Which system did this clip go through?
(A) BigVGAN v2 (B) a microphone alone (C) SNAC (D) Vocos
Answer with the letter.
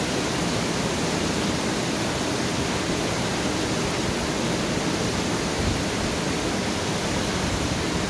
B